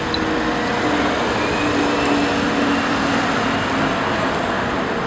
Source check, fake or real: real